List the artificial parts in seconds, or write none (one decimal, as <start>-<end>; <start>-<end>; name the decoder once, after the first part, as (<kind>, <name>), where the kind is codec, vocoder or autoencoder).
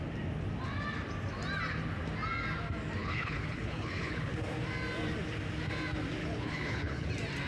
3.0-4.3 (codec, HILCodec); 6.2-7.1